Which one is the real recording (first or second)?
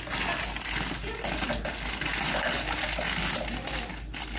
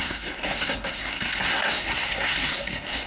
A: first